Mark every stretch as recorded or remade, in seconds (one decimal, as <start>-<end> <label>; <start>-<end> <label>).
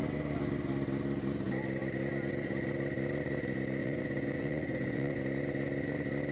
0.0-3.8 recorded; 3.8-5.2 remade; 5.2-6.3 recorded